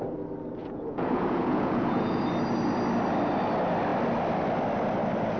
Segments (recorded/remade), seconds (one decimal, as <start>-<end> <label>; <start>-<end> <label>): 0.0-0.6 recorded; 0.6-2.2 remade; 2.2-5.4 recorded